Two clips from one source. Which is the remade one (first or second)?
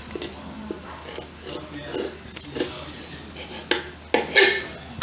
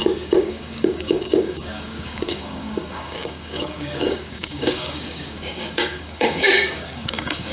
second